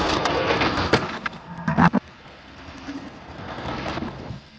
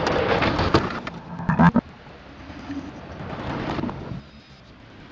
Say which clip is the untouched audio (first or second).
second